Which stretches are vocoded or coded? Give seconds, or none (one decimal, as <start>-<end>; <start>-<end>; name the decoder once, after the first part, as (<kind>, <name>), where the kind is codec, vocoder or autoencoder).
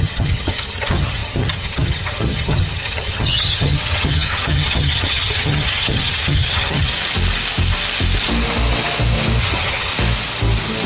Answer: 0.0-6.9 (vocoder, HiFi-GAN); 9.4-9.9